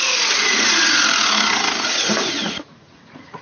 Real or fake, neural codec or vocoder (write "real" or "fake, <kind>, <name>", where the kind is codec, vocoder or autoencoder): fake, vocoder, Vocos